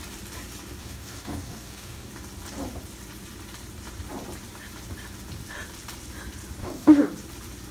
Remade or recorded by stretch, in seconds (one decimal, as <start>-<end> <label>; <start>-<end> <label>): 0.0-0.8 recorded; 0.8-2.1 remade; 2.1-6.6 recorded; 6.6-7.1 remade; 7.1-7.7 recorded